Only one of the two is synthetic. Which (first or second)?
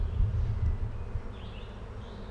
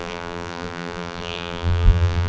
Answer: second